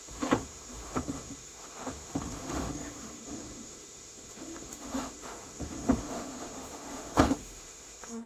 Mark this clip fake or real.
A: fake